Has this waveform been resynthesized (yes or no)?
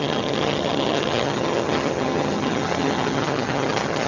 yes